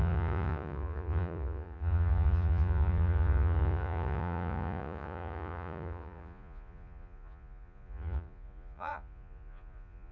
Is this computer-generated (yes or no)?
yes